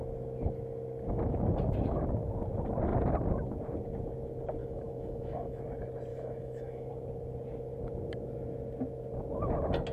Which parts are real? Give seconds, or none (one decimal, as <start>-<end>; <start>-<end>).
0.0-4.6; 5.6-6.1; 6.9-9.9

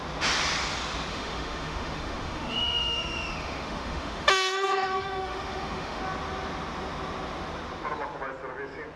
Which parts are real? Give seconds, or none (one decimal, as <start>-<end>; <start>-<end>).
0.0-1.1; 6.0-9.0

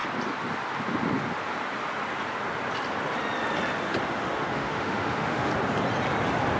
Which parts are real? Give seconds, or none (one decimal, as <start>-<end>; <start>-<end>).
0.0-4.0; 5.5-6.6

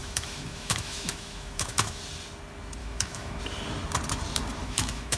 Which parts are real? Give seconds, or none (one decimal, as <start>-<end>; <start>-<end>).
2.0-2.8; 3.4-4.6

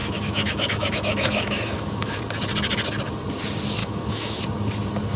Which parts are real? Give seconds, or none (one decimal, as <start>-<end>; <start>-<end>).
2.2-3.8; 4.4-5.2

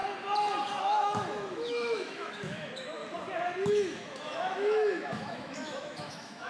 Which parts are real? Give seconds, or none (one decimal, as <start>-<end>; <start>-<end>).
0.0-0.8; 3.0-3.7